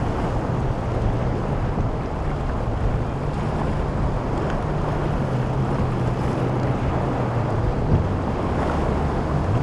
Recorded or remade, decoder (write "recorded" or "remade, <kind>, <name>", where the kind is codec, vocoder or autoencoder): recorded